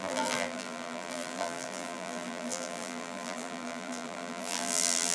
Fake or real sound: fake